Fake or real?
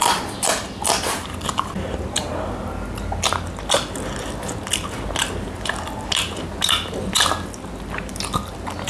real